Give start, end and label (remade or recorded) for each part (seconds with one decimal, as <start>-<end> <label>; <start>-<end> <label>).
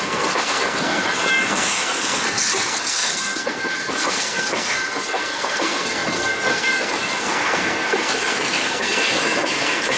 0.0-10.0 remade